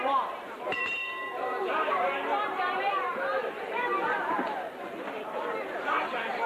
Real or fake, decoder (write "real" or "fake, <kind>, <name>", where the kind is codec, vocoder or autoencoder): fake, vocoder, BigVGAN v2